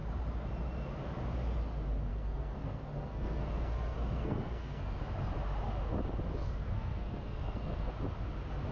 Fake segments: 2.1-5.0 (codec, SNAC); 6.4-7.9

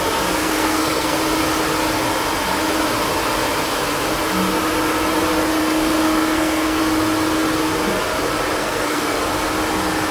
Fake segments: 0.4-1.2 (codec, SNAC); 5.6-6.8; 8.6-9.2